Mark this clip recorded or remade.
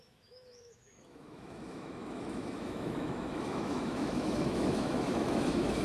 remade